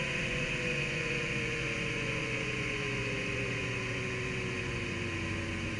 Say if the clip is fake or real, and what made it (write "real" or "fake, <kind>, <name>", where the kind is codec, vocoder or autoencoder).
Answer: fake, vocoder, Vocos